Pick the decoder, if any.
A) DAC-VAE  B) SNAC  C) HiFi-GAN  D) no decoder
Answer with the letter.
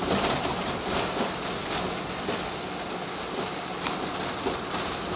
D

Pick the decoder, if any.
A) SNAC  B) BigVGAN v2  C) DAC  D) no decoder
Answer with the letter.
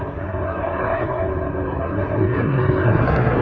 A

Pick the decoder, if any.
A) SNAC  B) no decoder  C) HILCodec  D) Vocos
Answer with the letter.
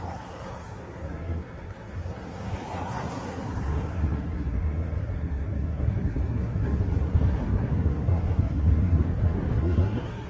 A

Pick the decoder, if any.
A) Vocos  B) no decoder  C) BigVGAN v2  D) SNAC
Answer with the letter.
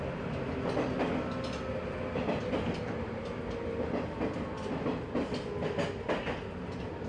B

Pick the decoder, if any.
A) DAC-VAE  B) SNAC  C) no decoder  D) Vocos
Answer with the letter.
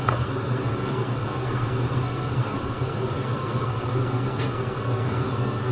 B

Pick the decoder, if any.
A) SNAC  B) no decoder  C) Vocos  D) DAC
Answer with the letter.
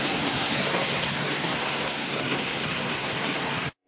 A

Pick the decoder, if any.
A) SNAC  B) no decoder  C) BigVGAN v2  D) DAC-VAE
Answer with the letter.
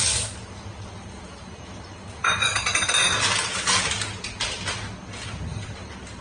B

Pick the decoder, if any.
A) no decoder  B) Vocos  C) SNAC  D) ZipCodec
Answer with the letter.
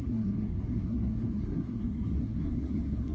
C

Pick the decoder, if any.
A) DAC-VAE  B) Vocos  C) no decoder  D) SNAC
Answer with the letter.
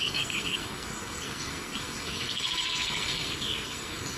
D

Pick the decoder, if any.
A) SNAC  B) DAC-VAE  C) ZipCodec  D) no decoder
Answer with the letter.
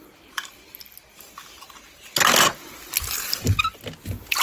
D